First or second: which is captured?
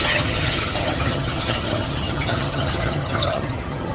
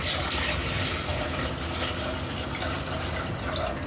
second